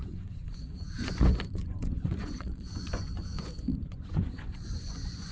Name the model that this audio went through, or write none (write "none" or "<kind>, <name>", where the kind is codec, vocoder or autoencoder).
vocoder, Vocos